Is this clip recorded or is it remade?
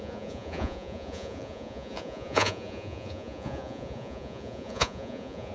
remade